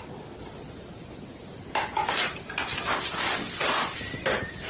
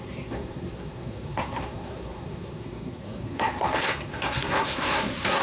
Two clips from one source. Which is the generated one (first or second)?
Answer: second